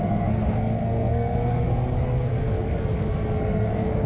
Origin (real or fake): fake